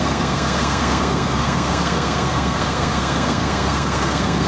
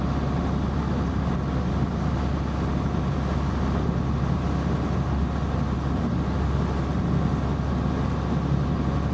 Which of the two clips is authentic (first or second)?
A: second